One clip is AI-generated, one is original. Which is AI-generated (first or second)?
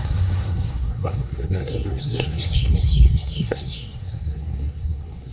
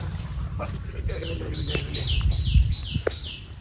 first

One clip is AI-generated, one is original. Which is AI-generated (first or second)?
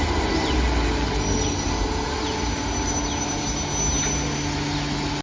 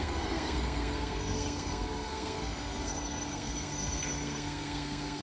second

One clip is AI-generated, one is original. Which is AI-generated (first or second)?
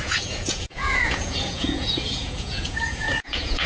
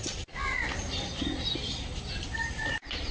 first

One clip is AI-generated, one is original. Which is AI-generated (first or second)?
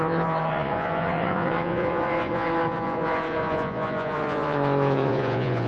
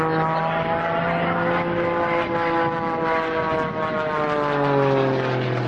first